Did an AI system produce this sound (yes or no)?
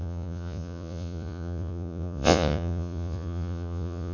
yes